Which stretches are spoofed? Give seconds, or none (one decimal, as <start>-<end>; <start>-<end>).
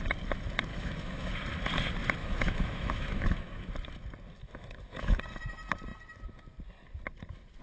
0.7-1.3; 2.2-3.7; 4.4-5.2